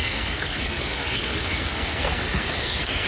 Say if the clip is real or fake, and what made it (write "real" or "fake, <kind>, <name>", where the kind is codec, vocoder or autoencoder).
fake, codec, SNAC